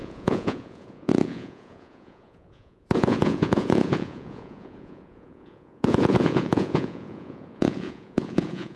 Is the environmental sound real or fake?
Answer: fake